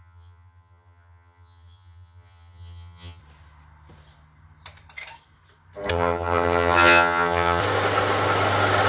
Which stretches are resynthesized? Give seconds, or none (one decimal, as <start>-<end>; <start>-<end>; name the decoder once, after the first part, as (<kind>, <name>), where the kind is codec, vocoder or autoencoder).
0.0-3.2 (vocoder, HiFi-GAN); 5.9-7.6